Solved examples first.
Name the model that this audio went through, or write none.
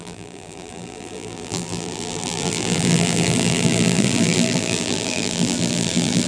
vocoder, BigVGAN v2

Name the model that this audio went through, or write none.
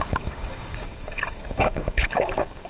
codec, DAC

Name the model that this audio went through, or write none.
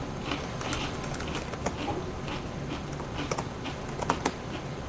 none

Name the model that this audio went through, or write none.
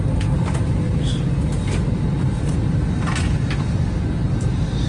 none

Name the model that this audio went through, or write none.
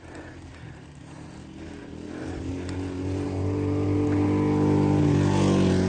none